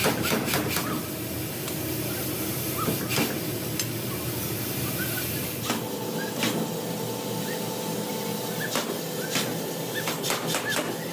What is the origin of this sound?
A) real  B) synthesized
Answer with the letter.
A